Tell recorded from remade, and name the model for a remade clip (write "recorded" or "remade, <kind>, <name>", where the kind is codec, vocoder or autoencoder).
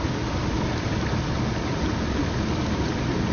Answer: recorded